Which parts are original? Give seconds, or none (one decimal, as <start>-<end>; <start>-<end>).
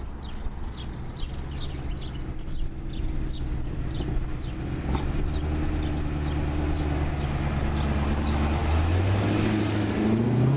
0.0-10.6